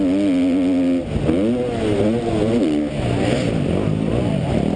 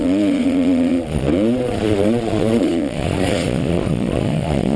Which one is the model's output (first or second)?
second